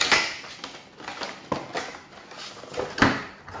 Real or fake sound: real